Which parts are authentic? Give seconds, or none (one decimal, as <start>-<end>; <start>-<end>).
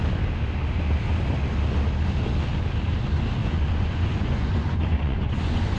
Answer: 0.0-3.4